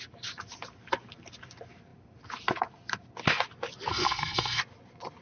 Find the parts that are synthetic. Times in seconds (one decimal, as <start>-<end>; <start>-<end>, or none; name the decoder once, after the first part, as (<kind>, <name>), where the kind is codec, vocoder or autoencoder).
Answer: 3.9-4.6 (codec, SNAC)